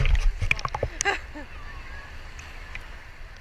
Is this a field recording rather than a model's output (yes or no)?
yes